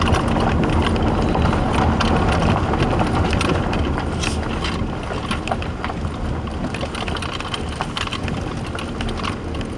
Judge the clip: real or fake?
real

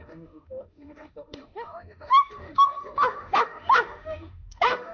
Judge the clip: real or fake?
fake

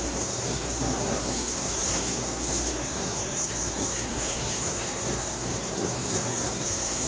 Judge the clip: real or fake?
fake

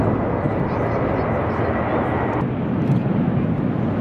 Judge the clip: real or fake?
real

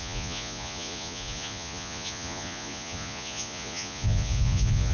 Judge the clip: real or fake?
fake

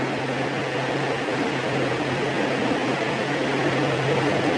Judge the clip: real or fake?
real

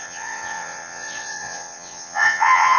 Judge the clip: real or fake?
fake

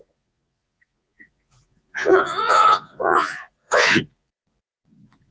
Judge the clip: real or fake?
fake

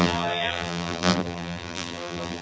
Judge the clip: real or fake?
fake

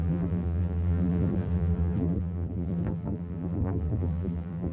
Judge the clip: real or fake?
fake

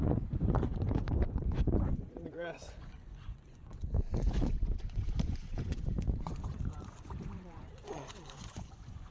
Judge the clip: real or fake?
fake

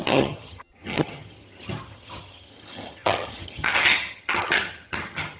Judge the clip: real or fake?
fake